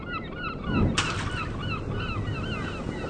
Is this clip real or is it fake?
real